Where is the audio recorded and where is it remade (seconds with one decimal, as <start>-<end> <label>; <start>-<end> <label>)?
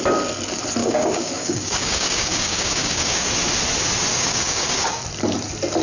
0.0-0.8 recorded; 0.8-3.3 remade; 3.3-4.1 recorded; 4.1-5.0 remade; 5.0-5.8 recorded